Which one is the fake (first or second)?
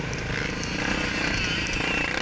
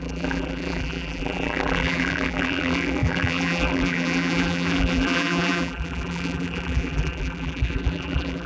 second